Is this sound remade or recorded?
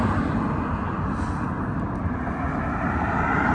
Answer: recorded